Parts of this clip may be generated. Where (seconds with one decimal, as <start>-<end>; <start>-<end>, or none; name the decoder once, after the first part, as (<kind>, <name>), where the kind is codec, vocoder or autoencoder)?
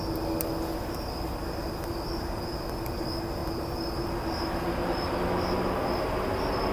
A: none